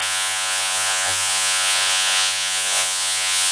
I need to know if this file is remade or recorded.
remade